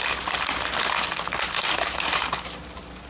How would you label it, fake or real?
real